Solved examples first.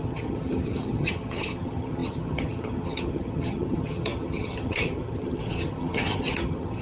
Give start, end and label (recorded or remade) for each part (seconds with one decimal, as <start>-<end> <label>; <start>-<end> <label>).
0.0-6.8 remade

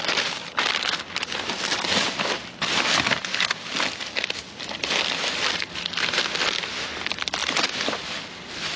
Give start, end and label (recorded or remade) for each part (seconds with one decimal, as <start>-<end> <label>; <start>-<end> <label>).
0.0-8.8 recorded

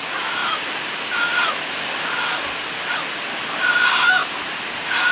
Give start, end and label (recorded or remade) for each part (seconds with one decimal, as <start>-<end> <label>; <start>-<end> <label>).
0.0-5.1 recorded

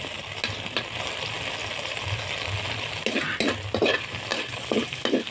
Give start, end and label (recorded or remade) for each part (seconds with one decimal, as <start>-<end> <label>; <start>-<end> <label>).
0.0-5.3 recorded